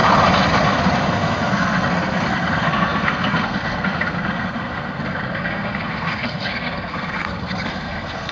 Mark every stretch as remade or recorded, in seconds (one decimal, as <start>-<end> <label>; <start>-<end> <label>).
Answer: 0.0-1.1 recorded; 1.1-8.3 remade